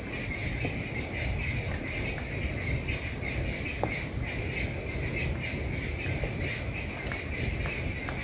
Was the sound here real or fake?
real